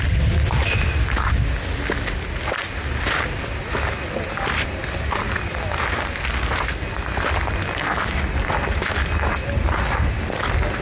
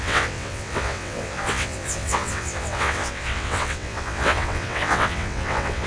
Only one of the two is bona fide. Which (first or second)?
first